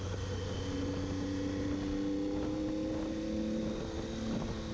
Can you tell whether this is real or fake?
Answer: real